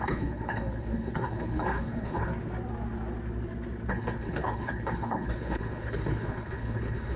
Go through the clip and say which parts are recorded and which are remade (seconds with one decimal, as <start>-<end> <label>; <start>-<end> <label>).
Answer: 0.0-2.3 remade; 2.3-3.9 recorded; 3.9-7.2 remade